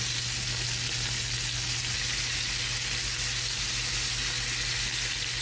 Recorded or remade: recorded